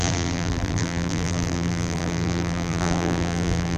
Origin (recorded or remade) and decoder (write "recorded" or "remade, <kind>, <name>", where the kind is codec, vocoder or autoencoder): remade, vocoder, BigVGAN v2